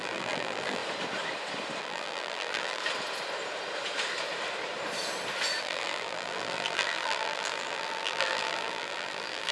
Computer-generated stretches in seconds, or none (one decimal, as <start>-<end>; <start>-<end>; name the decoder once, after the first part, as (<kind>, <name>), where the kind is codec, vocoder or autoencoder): 0.0-0.8 (vocoder, BigVGAN v2); 1.8-2.8; 5.6-9.5